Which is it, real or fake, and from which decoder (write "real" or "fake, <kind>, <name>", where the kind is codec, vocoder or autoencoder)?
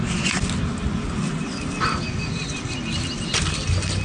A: real